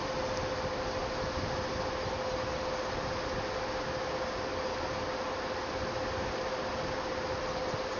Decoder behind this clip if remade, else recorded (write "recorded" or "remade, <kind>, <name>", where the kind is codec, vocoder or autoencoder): recorded